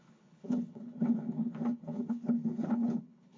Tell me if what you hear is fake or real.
fake